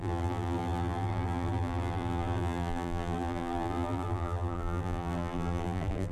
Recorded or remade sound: remade